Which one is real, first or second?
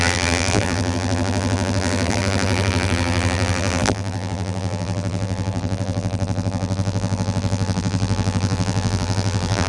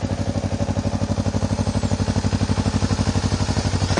second